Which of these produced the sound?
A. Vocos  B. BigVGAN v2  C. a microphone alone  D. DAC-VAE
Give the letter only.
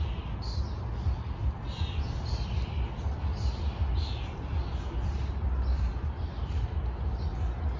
C